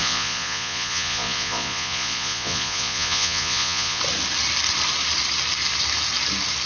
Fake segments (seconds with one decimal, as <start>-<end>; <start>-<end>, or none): 0.0-4.0